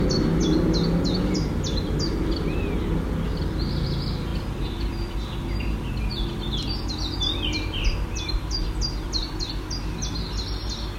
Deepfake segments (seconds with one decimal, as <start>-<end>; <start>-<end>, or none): none